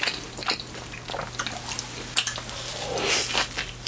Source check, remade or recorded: recorded